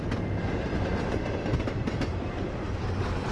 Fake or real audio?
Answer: real